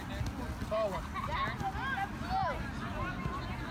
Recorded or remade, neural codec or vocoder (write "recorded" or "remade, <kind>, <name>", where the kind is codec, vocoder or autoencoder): recorded